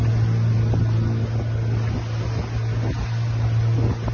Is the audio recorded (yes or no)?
yes